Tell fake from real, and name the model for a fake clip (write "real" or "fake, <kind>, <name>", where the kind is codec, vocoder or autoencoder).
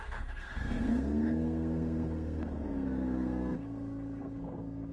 fake, codec, SNAC